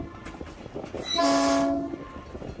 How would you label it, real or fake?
real